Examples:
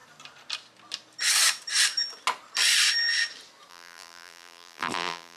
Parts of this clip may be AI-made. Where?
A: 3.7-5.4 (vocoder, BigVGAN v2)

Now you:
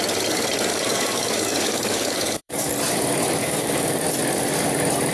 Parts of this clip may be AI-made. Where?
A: 0.7-2.7 (codec, DAC); 3.4-4.0

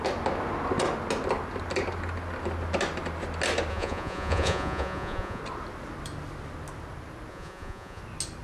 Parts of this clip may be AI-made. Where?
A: 3.7-5.4 (vocoder, Vocos); 7.3-8.0

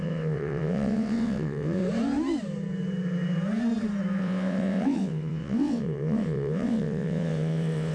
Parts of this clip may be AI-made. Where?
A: 0.0-1.8 (vocoder, WaveNeXt); 4.2-7.9

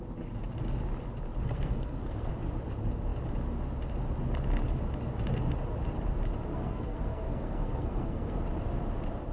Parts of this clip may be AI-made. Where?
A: 1.4-2.3 (codec, SNAC); 6.5-8.4

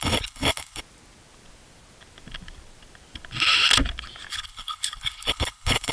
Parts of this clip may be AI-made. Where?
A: 0.0-0.8 (codec, HILCodec); 4.3-5.9